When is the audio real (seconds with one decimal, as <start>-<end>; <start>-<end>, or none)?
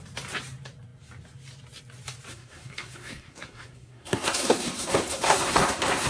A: 0.0-2.3